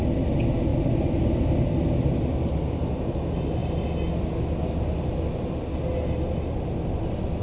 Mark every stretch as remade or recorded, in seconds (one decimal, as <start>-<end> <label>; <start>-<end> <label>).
0.0-7.4 recorded